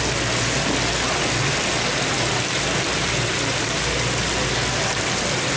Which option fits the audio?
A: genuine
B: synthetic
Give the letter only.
A